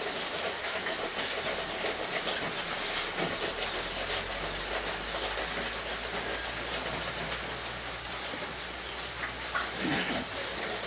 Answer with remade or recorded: recorded